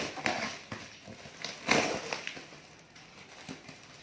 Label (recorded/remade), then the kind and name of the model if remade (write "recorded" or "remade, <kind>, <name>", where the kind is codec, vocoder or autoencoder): recorded